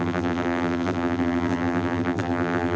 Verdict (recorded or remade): remade